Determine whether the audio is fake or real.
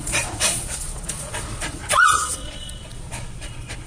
fake